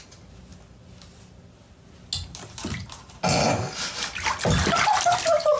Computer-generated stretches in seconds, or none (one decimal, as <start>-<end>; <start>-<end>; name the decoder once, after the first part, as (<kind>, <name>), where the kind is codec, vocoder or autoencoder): none